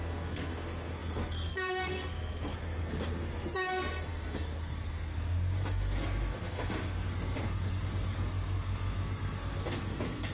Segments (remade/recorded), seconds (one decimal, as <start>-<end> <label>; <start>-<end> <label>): 0.0-10.3 remade